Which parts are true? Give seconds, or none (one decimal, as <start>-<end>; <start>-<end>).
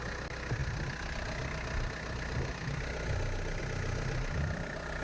0.0-5.0